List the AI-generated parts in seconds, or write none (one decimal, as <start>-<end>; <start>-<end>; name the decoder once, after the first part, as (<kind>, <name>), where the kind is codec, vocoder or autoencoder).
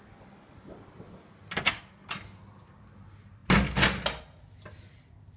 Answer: none